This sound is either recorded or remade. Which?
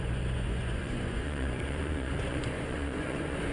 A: remade